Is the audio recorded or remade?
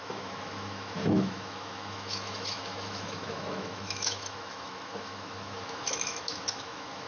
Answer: remade